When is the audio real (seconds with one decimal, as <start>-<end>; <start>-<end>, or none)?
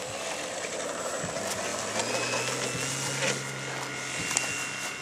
0.0-5.0